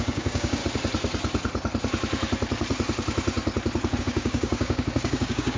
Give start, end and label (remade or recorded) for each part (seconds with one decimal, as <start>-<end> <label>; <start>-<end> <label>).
0.0-0.6 remade; 0.6-4.0 recorded; 4.0-5.6 remade